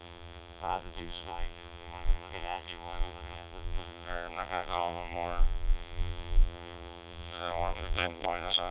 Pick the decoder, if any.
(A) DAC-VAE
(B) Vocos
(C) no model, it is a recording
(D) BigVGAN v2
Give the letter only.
D